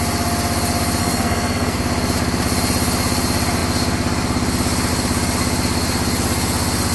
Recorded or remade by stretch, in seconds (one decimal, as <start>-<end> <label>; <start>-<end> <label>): 0.0-1.0 recorded; 1.0-1.8 remade; 1.8-6.9 recorded